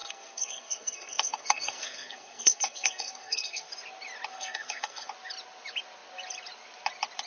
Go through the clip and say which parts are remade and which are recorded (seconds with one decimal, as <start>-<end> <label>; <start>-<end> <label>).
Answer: 0.0-3.7 remade; 3.7-4.3 recorded; 4.3-5.1 remade; 5.1-7.3 recorded